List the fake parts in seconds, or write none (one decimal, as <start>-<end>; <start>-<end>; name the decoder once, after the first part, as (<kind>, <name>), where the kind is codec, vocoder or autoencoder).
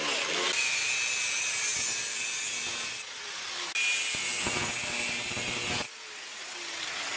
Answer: none